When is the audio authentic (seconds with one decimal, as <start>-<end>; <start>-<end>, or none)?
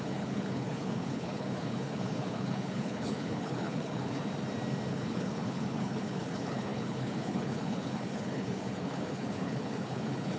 4.2-4.9